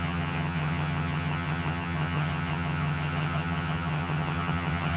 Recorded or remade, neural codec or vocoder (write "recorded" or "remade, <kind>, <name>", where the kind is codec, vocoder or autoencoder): remade, vocoder, HiFi-GAN